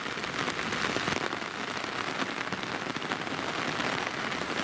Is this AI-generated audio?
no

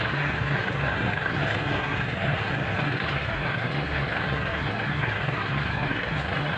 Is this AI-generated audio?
yes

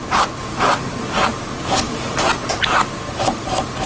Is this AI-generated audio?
no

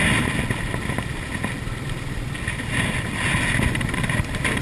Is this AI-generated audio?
no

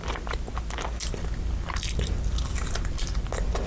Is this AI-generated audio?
no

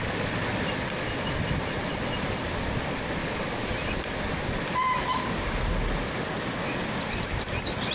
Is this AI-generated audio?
no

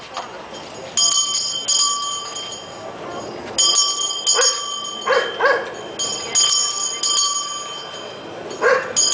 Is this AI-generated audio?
no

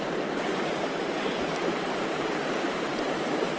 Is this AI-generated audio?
yes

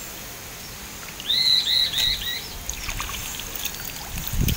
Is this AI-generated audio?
no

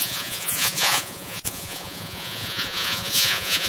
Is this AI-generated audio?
yes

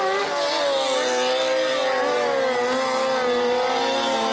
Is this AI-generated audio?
no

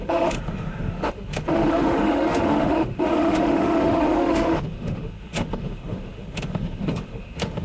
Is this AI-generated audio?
yes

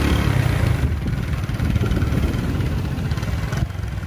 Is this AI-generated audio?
no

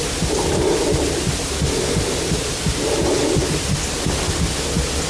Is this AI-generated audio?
no